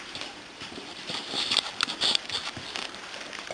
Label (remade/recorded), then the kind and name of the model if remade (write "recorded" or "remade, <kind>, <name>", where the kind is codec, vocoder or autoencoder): remade, vocoder, BigVGAN v2